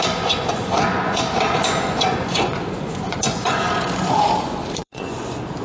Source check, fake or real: fake